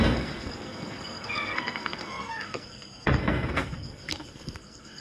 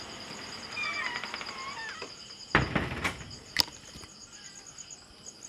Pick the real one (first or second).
second